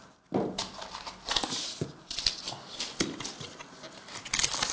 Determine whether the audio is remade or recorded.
recorded